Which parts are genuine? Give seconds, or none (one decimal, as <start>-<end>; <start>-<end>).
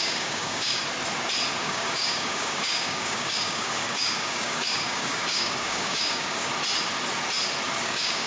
0.8-1.6; 6.5-7.8